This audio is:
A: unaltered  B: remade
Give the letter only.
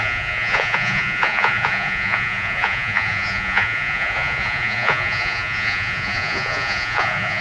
B